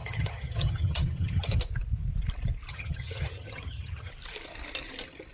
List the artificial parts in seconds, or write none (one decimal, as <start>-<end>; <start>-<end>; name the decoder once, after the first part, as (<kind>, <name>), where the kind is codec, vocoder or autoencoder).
0.0-1.6 (vocoder, HiFi-GAN); 2.7-4.1